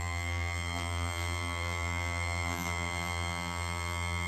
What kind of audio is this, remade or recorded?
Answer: remade